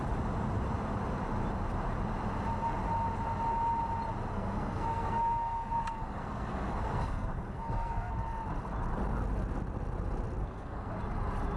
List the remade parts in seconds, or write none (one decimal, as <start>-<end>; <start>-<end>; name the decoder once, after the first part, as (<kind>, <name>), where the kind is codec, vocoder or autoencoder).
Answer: 4.3-8.1 (codec, SNAC); 10.4-10.9